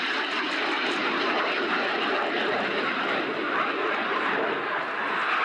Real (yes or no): yes